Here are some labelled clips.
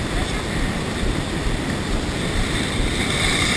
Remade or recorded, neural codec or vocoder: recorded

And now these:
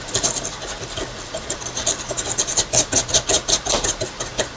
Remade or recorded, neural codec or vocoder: recorded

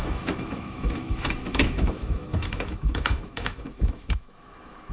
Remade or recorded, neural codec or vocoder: remade, autoencoder, DAC-VAE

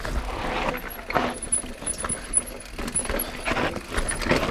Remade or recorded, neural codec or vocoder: recorded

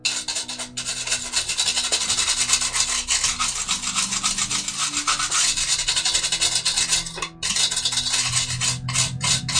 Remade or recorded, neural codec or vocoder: recorded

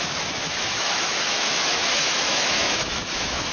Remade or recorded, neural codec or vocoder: remade, autoencoder, DAC-VAE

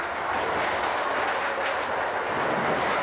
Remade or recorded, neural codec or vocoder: recorded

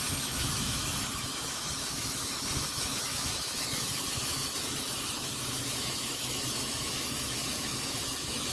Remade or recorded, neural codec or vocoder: remade, autoencoder, DAC-VAE